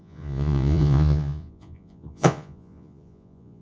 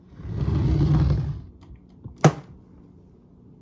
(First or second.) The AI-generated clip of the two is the first